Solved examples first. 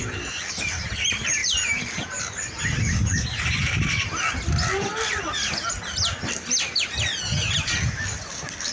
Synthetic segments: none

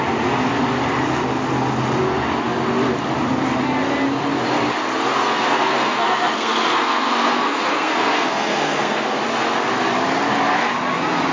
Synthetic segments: 5.2-9.2 (codec, SNAC)

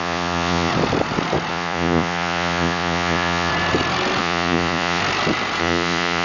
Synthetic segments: 0.0-0.7 (vocoder, Vocos); 1.5-3.5; 4.2-5.0; 5.6-6.2

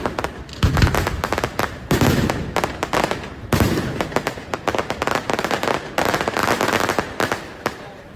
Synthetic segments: none